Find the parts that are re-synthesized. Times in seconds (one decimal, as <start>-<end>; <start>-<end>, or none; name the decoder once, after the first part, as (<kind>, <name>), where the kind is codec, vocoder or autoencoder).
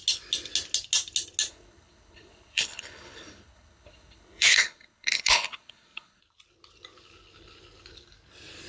1.5-6.2 (codec, HILCodec)